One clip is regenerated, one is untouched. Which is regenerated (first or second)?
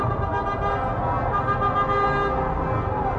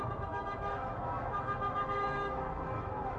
second